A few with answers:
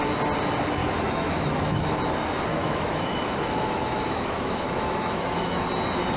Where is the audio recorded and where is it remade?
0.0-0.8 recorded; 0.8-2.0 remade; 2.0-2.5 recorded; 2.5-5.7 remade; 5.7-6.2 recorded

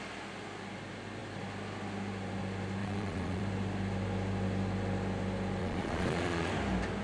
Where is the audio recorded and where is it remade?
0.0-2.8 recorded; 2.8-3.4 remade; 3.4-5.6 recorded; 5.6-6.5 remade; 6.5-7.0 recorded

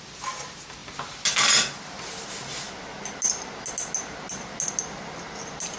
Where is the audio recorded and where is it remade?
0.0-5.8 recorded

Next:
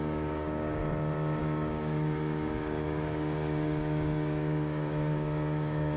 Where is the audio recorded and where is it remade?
0.0-0.8 remade; 0.8-1.4 recorded; 1.4-6.0 remade

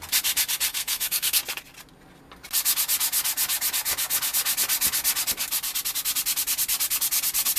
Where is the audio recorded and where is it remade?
0.0-0.7 recorded; 0.7-1.4 remade; 1.4-7.6 recorded

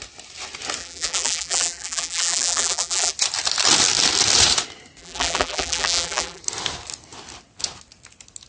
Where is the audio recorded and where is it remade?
0.0-0.8 recorded; 0.8-3.1 remade; 3.1-5.0 recorded; 5.0-6.4 remade; 6.4-8.5 recorded

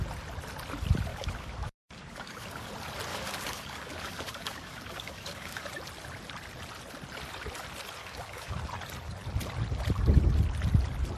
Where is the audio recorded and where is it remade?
0.0-1.1 recorded; 1.1-2.7 remade; 2.7-3.1 recorded; 3.1-5.7 remade; 5.7-8.0 recorded; 8.0-8.6 remade; 8.6-11.2 recorded

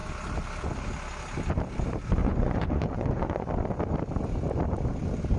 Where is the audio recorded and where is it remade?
0.0-2.2 recorded; 2.2-3.5 remade; 3.5-5.4 recorded